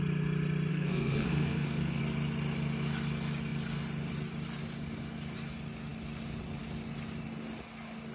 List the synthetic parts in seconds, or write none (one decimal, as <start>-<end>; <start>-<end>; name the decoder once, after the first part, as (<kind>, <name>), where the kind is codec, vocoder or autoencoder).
0.7-2.0 (codec, SNAC)